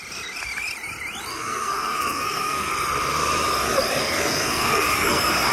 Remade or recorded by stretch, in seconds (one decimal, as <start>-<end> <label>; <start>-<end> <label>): 0.0-1.3 recorded; 1.3-2.7 remade; 2.7-4.0 recorded; 4.0-5.5 remade